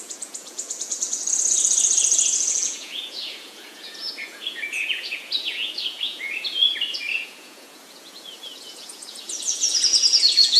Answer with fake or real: fake